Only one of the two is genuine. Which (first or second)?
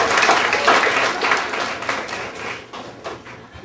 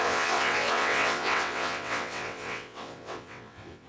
first